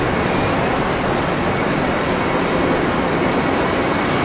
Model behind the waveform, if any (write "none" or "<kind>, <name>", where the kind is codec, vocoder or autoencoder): none